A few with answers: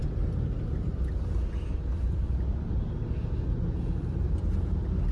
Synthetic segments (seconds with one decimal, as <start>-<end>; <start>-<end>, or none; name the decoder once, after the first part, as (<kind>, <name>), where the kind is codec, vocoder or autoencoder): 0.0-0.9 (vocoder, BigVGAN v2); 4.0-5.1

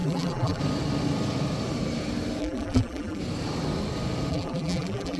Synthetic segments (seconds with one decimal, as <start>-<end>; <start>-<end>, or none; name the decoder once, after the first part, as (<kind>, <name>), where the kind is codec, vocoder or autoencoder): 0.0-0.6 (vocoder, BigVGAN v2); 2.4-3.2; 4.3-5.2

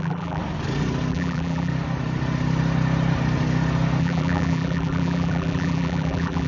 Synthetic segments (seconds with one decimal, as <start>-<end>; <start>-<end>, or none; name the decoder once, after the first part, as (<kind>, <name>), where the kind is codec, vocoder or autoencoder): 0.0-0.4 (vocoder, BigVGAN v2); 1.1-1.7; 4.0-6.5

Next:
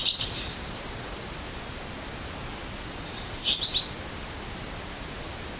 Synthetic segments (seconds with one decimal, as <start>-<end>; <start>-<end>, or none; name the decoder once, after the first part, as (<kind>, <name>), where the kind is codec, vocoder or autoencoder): 0.0-1.1 (vocoder, BigVGAN v2)

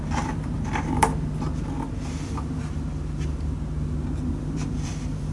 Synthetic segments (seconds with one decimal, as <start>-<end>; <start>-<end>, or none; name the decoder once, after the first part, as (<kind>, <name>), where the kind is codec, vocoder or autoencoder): 0.0-1.1 (vocoder, BigVGAN v2); 4.3-5.3